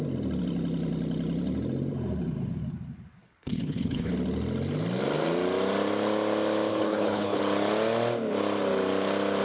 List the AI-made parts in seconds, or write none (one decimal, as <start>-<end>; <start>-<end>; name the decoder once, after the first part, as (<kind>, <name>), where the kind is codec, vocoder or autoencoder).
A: 3.2-4.1 (codec, HILCodec); 6.7-7.4